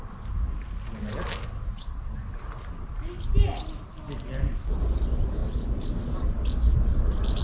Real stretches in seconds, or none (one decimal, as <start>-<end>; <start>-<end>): 0.0-7.4